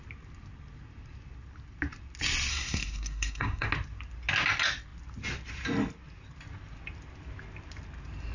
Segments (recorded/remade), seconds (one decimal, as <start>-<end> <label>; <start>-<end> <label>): 0.0-2.5 recorded; 2.5-3.7 remade; 3.7-8.3 recorded